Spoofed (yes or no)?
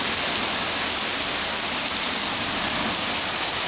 no